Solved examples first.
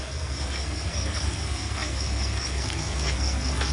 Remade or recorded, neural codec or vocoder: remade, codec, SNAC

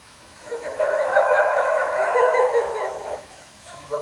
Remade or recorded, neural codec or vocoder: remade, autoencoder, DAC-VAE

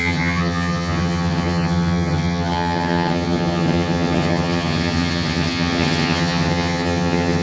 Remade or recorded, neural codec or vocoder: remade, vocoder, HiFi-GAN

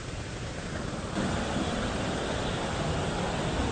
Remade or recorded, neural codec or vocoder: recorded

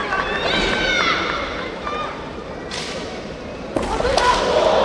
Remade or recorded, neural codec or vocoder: recorded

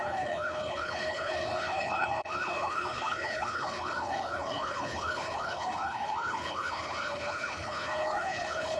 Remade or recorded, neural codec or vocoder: remade, codec, HILCodec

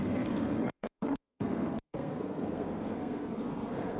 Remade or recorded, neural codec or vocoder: remade, codec, SNAC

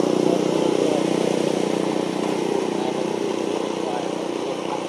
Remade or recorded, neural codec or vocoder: recorded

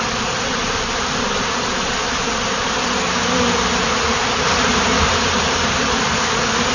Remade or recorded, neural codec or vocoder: recorded